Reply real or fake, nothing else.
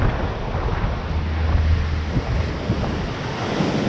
real